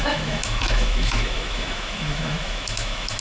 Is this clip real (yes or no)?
no